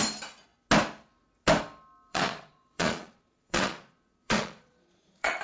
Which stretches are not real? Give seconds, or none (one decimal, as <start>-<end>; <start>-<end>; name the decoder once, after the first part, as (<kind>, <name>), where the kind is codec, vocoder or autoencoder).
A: 2.1-5.4 (vocoder, Vocos)